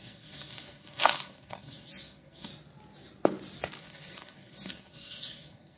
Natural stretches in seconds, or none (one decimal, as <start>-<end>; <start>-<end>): 2.5-3.8